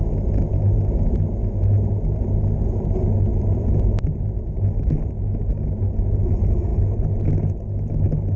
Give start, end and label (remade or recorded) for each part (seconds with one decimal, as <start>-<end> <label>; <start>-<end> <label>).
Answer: 0.0-3.3 recorded; 3.3-4.2 remade; 4.2-8.4 recorded